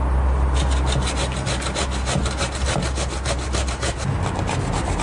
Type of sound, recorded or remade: recorded